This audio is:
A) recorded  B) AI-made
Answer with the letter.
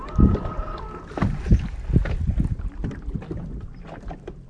A